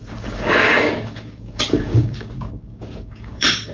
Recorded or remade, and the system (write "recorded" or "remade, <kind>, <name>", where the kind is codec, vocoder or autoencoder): remade, codec, DAC